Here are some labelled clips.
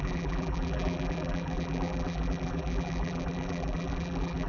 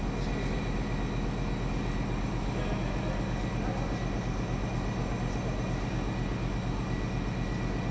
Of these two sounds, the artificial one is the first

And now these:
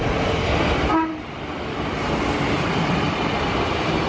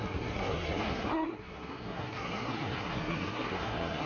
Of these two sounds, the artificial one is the second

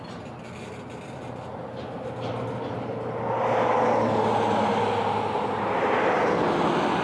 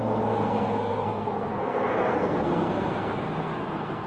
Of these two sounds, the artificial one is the second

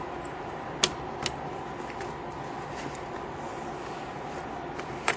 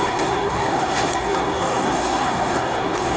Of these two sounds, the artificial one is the second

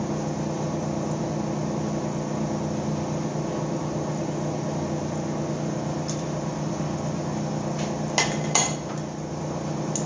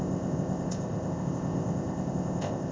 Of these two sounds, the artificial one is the second